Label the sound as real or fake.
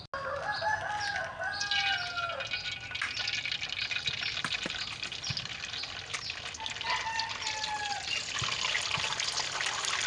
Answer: real